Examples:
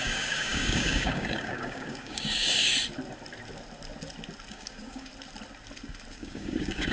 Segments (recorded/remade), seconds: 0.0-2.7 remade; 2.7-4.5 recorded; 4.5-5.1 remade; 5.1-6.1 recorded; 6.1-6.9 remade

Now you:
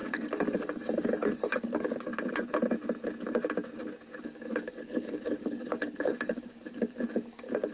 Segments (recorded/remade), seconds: 0.0-2.1 remade; 2.1-4.2 recorded; 4.2-7.7 remade

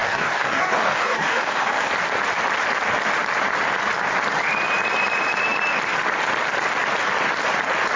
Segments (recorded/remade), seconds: 0.0-1.9 remade; 1.9-8.0 recorded

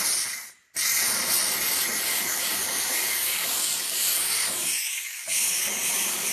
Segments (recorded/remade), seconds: 0.0-2.1 recorded; 2.1-6.3 remade